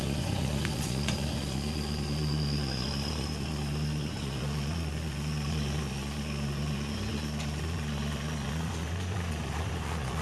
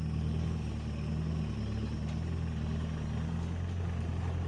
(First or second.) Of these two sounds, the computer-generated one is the first